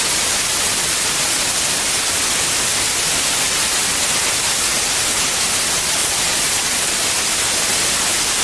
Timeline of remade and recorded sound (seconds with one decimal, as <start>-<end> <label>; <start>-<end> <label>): 0.0-0.8 recorded; 0.8-1.4 remade; 1.4-6.0 recorded; 6.0-7.0 remade; 7.0-8.4 recorded

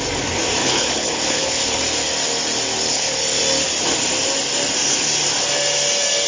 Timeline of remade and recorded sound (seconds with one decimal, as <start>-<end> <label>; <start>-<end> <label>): 0.0-0.6 recorded; 0.6-1.8 remade; 1.8-2.9 recorded; 2.9-3.4 remade; 3.4-6.3 recorded

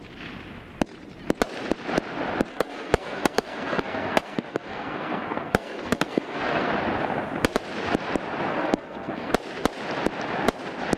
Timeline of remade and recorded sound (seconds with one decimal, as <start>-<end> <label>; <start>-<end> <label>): 0.0-2.5 recorded; 2.5-6.7 remade; 6.7-8.5 recorded; 8.5-9.3 remade; 9.3-11.0 recorded

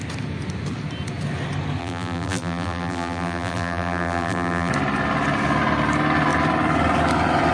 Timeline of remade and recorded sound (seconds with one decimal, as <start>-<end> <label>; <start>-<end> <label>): 0.0-1.8 recorded; 1.8-4.7 remade; 4.7-7.5 recorded

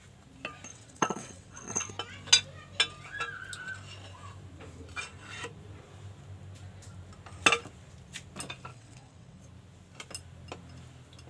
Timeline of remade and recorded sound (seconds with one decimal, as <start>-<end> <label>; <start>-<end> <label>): 0.0-0.7 recorded; 0.7-1.9 remade; 1.9-8.7 recorded; 8.7-9.4 remade; 9.4-11.3 recorded

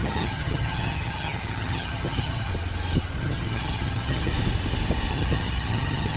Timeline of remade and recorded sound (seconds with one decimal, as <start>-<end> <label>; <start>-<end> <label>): 0.0-2.5 remade; 2.5-3.2 recorded; 3.2-4.3 remade; 4.3-5.1 recorded; 5.1-6.2 remade